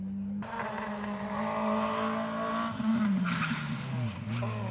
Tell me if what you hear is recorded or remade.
recorded